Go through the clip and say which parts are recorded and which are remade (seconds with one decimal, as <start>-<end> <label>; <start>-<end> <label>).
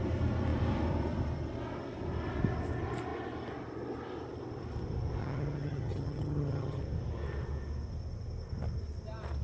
0.0-5.2 recorded; 5.2-6.8 remade; 6.8-9.4 recorded